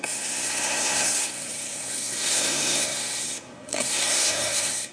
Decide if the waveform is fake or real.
fake